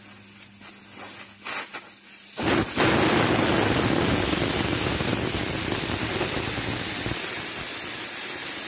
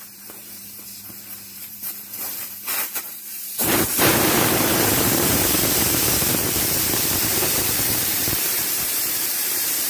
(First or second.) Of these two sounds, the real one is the first